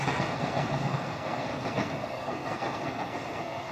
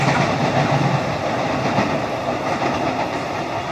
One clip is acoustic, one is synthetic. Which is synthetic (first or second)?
first